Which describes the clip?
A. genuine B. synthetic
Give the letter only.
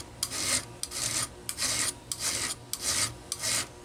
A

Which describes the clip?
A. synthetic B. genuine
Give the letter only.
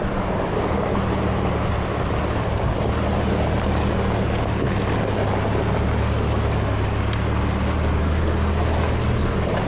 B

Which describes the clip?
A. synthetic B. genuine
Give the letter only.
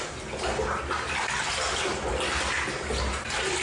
B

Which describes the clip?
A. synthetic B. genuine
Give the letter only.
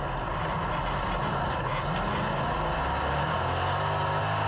B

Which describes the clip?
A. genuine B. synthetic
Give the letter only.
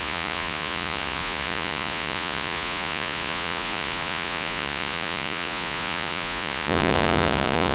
B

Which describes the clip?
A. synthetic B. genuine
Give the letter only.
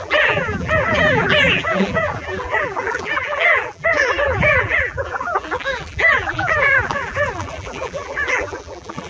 A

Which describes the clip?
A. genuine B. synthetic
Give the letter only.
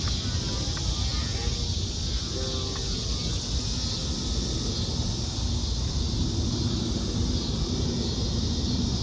A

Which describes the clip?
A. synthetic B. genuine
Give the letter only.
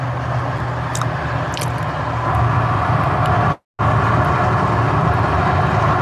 B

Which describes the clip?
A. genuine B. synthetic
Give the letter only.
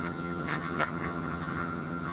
B